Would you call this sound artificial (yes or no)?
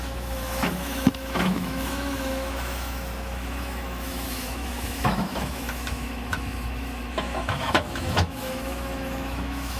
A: yes